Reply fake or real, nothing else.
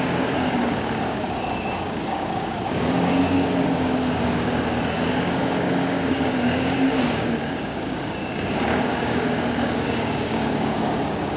fake